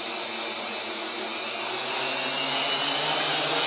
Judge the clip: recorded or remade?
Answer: recorded